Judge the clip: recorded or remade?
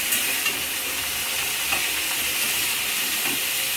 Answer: recorded